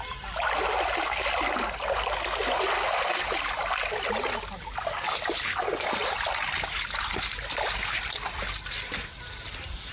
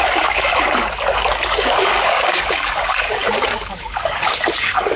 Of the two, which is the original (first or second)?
first